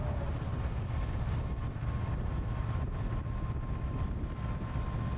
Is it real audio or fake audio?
real